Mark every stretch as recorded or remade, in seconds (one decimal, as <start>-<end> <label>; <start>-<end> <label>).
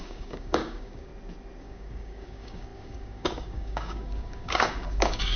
0.0-1.1 remade; 1.1-1.6 recorded; 1.6-5.4 remade